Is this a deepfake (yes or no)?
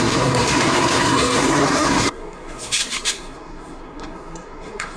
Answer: yes